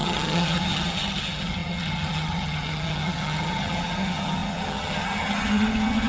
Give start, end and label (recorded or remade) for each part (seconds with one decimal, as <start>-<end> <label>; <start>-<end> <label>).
0.0-6.1 remade